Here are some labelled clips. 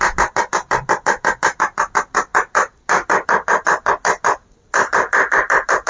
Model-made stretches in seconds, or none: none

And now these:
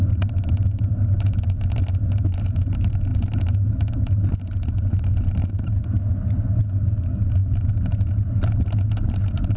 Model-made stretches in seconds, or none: none

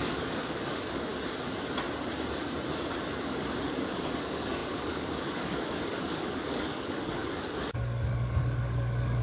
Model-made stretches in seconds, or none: 0.0-1.1 (codec, DAC); 3.2-9.2

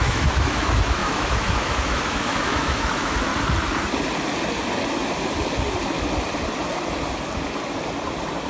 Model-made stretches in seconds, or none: 0.0-3.3 (autoencoder, DAC-VAE)

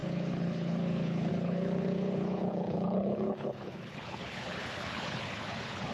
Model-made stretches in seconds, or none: 0.0-5.9 (codec, HILCodec)